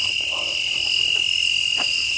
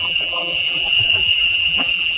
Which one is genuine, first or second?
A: first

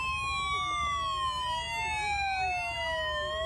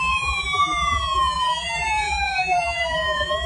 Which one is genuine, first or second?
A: first